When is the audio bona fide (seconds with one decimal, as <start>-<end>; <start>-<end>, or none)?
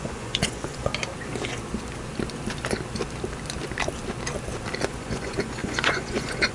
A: 0.9-4.8